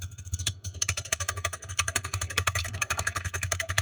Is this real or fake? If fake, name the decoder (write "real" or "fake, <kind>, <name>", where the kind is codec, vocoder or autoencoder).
fake, codec, SNAC